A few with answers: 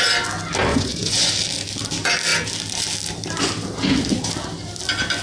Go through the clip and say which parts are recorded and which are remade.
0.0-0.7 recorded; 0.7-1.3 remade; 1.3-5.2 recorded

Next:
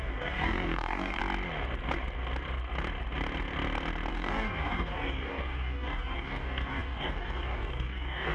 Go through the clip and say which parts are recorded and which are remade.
0.0-1.2 remade; 1.2-4.1 recorded; 4.1-8.3 remade

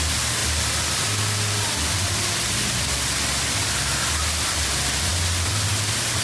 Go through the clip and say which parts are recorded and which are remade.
0.0-6.2 recorded